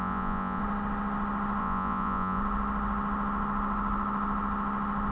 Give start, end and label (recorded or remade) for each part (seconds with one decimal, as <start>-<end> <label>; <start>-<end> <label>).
0.0-0.6 remade; 0.6-1.6 recorded; 1.6-2.4 remade; 2.4-5.1 recorded

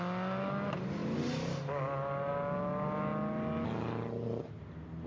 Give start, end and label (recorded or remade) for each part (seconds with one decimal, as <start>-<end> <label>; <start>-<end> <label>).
0.0-5.1 recorded

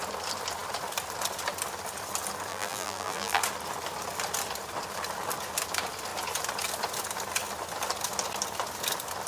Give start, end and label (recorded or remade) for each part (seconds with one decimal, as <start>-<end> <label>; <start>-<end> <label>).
0.0-2.5 recorded; 2.5-3.4 remade; 3.4-9.3 recorded

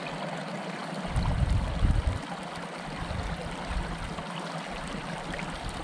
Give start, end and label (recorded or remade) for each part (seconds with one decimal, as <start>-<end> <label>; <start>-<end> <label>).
0.0-5.8 recorded

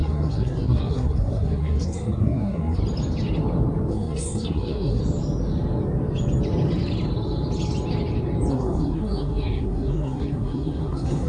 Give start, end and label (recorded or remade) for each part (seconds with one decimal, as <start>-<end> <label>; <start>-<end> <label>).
0.0-2.8 remade; 2.8-3.9 recorded; 3.9-5.0 remade; 5.0-8.5 recorded; 8.5-11.3 remade

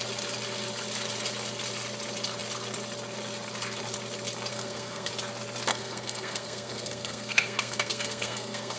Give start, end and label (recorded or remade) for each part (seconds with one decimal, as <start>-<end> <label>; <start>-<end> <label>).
0.0-4.5 recorded; 4.5-5.1 remade; 5.1-5.7 recorded; 5.7-8.8 remade